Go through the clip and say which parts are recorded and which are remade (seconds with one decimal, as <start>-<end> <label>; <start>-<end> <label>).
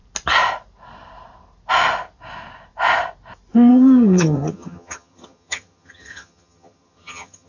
0.0-3.7 recorded; 3.7-7.5 remade